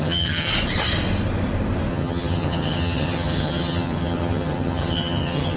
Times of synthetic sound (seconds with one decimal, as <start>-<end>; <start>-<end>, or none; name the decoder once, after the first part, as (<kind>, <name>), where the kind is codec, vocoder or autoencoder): 0.0-0.5 (vocoder, HiFi-GAN); 1.9-5.6

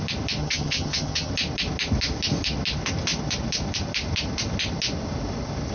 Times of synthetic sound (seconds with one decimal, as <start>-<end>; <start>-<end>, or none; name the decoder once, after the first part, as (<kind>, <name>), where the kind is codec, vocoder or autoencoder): 0.4-1.3 (vocoder, HiFi-GAN)

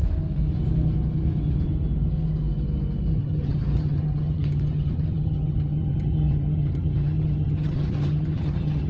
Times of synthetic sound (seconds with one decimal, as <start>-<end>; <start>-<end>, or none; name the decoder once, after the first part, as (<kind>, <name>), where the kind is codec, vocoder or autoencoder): 3.1-8.9 (vocoder, HiFi-GAN)

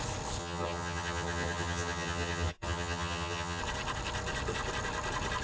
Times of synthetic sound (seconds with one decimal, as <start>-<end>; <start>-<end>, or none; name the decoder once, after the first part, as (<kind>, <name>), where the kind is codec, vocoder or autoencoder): 0.4-3.6 (vocoder, HiFi-GAN)

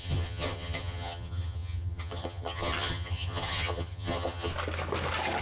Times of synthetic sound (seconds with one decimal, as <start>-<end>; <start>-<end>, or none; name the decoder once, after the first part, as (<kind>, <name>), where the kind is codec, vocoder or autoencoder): 0.0-4.5 (vocoder, HiFi-GAN)

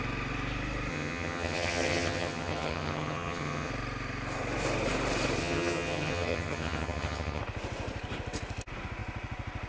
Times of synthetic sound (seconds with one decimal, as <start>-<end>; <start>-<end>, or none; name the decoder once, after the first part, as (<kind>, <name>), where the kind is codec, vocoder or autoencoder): 0.9-3.7 (vocoder, HiFi-GAN); 5.4-7.4